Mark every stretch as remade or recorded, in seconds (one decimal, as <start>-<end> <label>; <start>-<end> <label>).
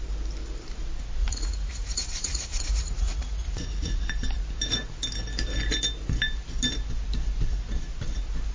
0.0-1.2 recorded; 1.2-4.0 remade; 4.0-8.5 recorded